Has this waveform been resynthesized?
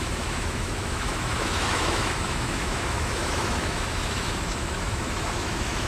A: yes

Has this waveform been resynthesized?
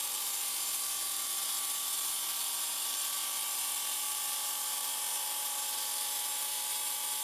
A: yes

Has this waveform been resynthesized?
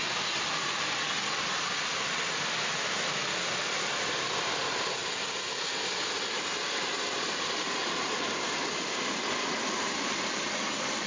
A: no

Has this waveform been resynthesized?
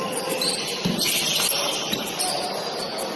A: no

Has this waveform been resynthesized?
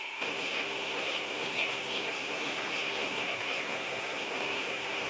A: yes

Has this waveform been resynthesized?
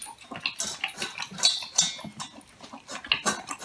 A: no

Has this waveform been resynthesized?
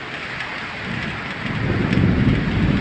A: no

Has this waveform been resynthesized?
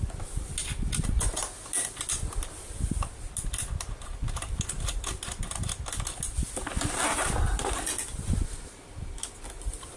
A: no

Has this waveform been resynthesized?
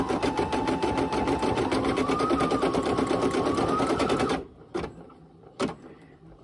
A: yes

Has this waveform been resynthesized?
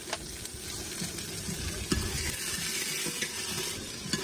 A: no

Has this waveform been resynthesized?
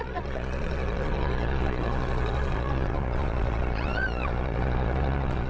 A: yes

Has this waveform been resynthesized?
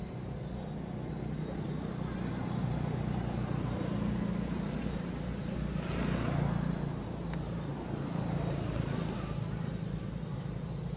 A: no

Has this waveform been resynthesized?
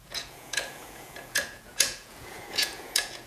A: yes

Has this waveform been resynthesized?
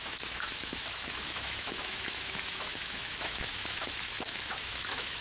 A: yes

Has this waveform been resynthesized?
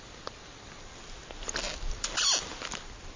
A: no